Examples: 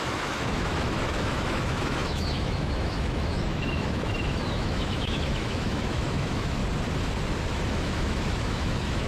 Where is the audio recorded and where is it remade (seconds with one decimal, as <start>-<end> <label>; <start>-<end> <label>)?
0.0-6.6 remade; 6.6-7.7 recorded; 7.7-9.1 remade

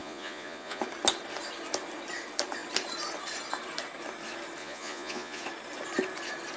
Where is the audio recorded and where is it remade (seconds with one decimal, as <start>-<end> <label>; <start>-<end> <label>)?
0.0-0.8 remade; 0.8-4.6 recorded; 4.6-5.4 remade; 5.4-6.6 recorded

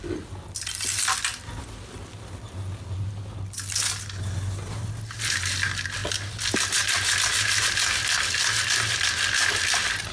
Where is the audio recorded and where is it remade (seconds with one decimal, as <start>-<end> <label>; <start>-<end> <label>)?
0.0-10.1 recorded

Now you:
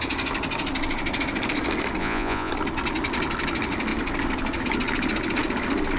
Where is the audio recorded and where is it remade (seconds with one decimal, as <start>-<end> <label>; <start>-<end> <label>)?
0.0-2.0 recorded; 2.0-2.5 remade; 2.5-6.0 recorded

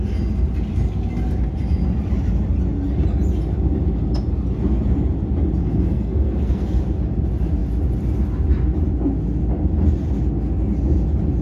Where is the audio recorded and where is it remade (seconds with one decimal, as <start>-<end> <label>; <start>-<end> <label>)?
0.0-5.6 recorded; 5.6-6.8 remade; 6.8-11.4 recorded

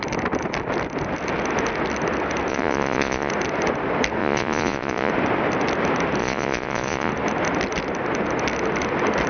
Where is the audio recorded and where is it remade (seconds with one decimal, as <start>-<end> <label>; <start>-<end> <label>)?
0.0-2.5 recorded; 2.5-3.3 remade; 3.3-4.2 recorded; 4.2-5.1 remade; 5.1-6.2 recorded; 6.2-7.1 remade; 7.1-9.3 recorded

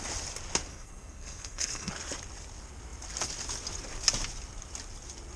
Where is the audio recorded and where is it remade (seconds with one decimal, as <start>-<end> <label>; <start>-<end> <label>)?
0.0-0.7 recorded; 0.7-1.9 remade; 1.9-5.4 recorded

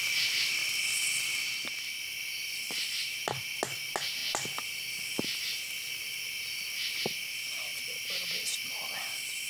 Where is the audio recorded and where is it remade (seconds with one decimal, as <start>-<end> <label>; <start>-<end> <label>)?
0.0-9.5 recorded